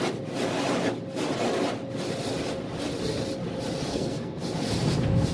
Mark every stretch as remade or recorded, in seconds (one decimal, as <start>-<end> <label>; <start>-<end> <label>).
0.0-3.9 recorded; 3.9-4.4 remade; 4.4-5.3 recorded